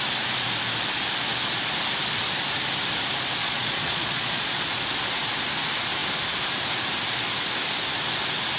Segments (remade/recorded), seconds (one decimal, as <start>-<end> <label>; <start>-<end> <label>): 0.0-3.4 recorded; 3.4-4.8 remade; 4.8-8.6 recorded